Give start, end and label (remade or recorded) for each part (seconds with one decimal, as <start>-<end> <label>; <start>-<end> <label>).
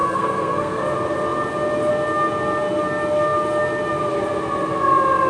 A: 0.0-0.8 remade; 0.8-5.3 recorded